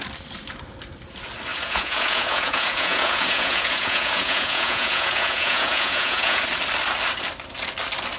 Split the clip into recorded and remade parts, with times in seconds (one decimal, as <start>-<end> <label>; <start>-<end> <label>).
0.0-1.5 recorded; 1.5-6.4 remade; 6.4-8.2 recorded